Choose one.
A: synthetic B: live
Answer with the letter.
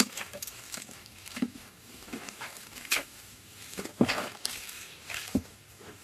A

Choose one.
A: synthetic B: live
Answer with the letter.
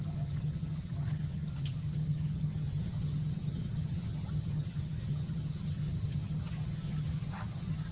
A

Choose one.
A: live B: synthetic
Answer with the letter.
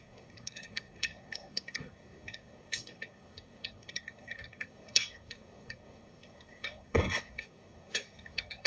B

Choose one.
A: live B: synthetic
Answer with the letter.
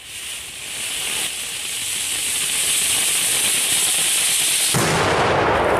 A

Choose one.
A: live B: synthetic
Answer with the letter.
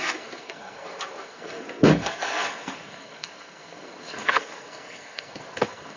B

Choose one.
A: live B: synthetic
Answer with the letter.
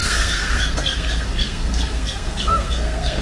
B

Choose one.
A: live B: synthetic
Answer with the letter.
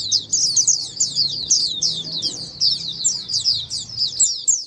A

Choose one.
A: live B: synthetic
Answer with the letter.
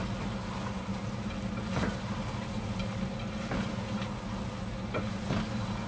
A